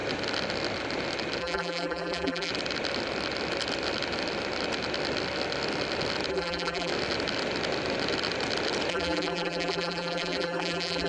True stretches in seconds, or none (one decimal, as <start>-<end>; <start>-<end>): 0.0-1.4; 2.5-6.3; 6.9-8.9